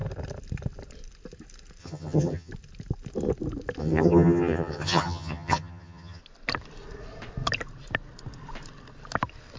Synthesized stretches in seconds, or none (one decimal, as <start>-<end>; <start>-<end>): 1.8-2.5; 3.8-6.2